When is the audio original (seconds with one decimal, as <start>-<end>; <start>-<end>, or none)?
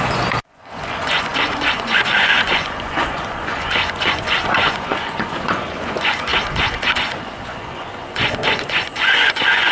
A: none